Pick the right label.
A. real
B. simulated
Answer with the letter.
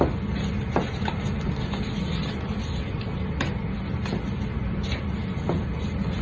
A